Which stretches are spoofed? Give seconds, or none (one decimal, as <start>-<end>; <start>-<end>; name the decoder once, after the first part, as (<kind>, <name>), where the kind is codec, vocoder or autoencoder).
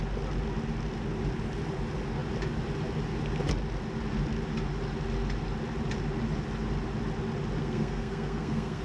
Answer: 7.6-8.8 (codec, SNAC)